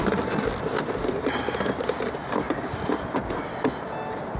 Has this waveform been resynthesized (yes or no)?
no